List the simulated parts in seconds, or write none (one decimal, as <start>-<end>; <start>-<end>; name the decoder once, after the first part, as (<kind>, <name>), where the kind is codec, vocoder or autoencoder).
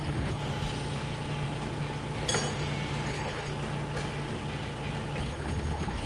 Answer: 0.0-0.4 (codec, HILCodec); 3.1-3.5; 5.2-6.1